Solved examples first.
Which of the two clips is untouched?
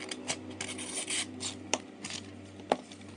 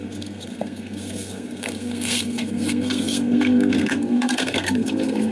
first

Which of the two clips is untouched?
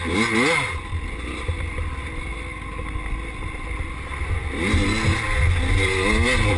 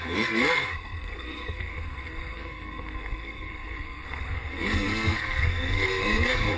first